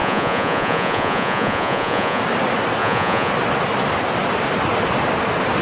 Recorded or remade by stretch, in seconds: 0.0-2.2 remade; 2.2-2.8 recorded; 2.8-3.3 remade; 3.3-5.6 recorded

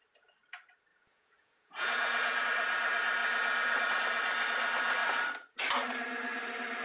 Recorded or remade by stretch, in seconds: 0.0-0.9 recorded; 0.9-2.4 remade; 2.4-6.8 recorded

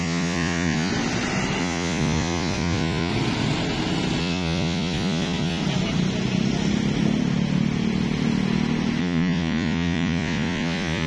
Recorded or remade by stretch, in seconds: 0.0-0.9 remade; 0.9-1.6 recorded; 1.6-3.1 remade; 3.1-4.2 recorded; 4.2-5.6 remade; 5.6-9.0 recorded; 9.0-11.1 remade